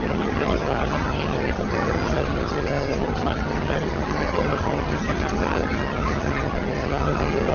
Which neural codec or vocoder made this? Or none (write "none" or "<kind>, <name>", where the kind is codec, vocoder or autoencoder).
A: vocoder, HiFi-GAN